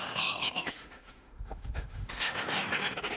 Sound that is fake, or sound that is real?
fake